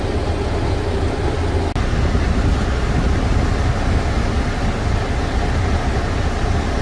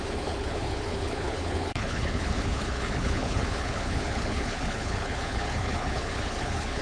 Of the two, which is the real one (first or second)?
first